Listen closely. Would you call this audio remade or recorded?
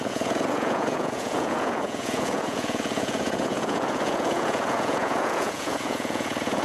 remade